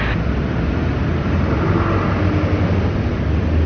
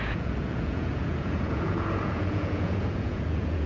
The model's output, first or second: second